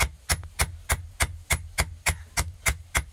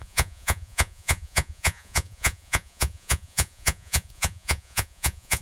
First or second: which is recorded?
first